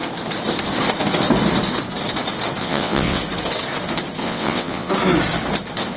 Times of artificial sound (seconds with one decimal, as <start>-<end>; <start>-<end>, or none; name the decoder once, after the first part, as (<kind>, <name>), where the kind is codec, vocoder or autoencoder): 2.6-3.2 (vocoder, WaveNeXt); 4.2-4.9